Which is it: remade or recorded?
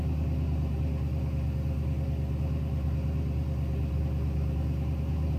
recorded